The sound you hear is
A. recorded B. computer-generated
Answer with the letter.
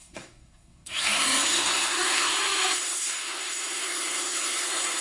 B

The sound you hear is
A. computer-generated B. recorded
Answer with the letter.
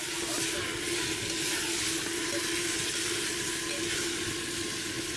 B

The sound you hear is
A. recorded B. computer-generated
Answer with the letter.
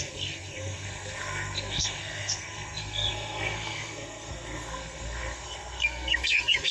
B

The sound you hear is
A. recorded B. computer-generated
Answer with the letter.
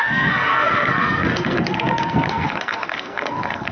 B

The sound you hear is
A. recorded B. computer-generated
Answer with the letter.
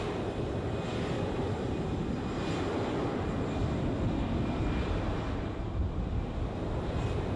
A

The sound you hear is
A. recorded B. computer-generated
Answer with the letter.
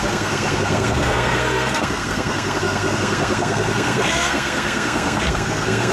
B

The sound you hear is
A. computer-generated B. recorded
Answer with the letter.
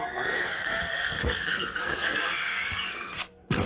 A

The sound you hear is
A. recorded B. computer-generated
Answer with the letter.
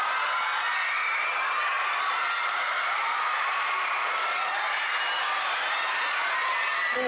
A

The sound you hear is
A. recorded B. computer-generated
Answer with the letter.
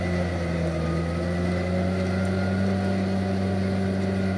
A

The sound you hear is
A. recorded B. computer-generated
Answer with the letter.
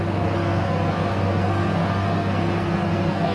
B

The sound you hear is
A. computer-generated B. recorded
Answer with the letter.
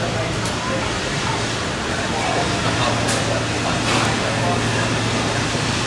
B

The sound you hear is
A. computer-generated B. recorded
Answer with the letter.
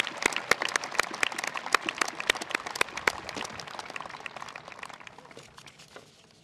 B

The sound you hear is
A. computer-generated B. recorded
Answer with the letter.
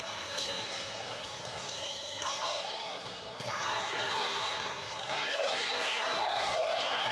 A